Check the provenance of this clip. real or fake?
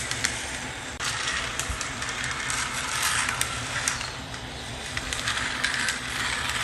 fake